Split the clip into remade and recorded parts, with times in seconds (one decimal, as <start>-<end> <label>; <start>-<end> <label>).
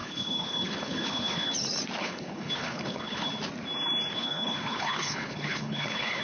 0.0-1.5 remade; 1.5-2.0 recorded; 2.0-3.3 remade; 3.3-4.1 recorded; 4.1-6.2 remade